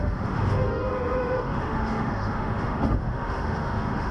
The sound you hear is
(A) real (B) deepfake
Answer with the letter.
B